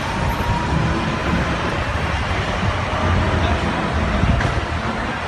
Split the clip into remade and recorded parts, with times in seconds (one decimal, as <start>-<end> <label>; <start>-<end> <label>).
0.0-5.3 recorded